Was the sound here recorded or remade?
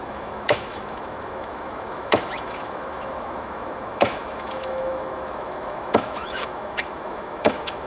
remade